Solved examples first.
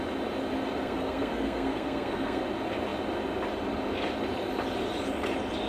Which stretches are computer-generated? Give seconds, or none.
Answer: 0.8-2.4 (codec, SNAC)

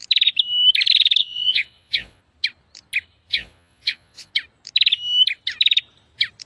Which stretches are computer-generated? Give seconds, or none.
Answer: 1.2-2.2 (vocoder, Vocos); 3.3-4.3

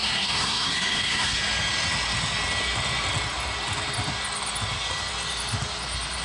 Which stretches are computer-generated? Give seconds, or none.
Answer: 0.0-1.4 (codec, SNAC)

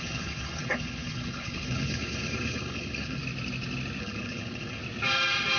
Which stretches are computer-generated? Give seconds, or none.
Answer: 0.0-3.2 (codec, HILCodec); 4.0-4.8

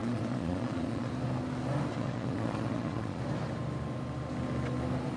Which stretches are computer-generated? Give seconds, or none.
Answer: 0.0-1.1 (vocoder, Vocos); 1.9-3.2